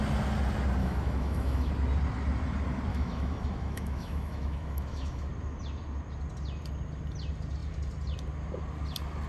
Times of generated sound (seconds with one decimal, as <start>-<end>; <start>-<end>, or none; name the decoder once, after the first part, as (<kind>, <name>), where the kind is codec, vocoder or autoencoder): 0.8-1.7 (autoencoder, DAC-VAE); 2.9-5.3